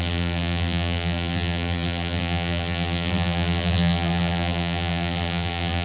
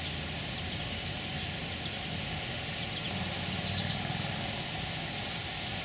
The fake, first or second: first